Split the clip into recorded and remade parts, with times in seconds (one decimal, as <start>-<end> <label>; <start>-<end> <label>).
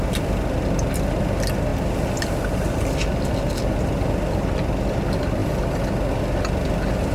0.0-7.1 recorded